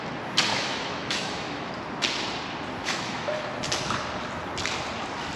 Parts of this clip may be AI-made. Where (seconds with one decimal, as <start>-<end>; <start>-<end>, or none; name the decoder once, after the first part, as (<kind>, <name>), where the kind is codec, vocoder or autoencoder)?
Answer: 0.5-1.7 (autoencoder, DAC-VAE); 2.8-3.4